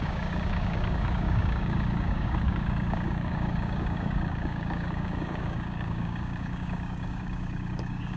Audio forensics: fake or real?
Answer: fake